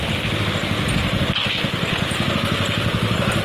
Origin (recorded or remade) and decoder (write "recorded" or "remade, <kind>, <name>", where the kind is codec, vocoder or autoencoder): recorded